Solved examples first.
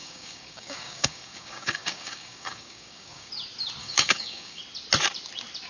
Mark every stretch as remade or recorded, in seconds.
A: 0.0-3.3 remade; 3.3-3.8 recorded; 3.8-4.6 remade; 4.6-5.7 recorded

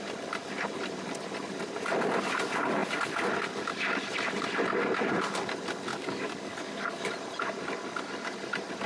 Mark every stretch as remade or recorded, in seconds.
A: 0.0-5.9 recorded; 5.9-7.1 remade; 7.1-8.9 recorded